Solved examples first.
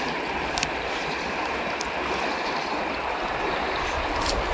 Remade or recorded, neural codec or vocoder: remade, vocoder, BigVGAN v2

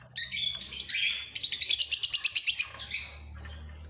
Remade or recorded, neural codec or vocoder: recorded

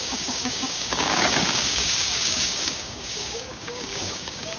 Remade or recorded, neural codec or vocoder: remade, codec, DAC